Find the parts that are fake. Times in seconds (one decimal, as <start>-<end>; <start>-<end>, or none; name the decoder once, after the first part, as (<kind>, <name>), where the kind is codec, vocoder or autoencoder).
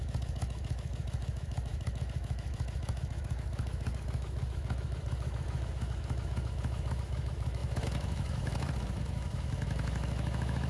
0.0-10.7 (autoencoder, DAC-VAE)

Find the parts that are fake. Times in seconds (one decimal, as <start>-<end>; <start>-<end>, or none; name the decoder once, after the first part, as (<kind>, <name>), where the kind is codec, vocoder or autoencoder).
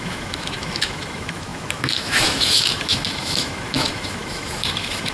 0.0-5.1 (autoencoder, DAC-VAE)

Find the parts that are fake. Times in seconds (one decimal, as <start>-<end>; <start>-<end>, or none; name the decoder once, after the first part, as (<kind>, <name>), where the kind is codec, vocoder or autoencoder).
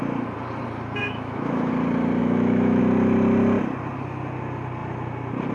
1.0-1.7 (autoencoder, DAC-VAE); 2.2-2.8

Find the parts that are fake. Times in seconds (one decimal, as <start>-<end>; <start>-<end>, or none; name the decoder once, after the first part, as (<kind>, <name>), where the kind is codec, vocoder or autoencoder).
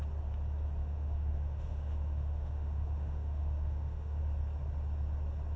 0.8-4.2 (autoencoder, DAC-VAE)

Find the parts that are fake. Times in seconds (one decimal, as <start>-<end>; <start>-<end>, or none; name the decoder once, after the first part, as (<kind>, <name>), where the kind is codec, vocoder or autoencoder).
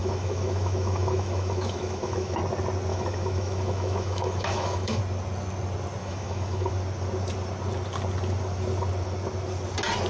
0.0-2.4 (autoencoder, DAC-VAE); 2.9-5.0; 6.0-6.7